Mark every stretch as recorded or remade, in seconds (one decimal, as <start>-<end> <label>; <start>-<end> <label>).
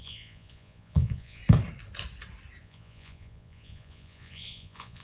0.0-1.4 remade; 1.4-2.6 recorded; 2.6-5.0 remade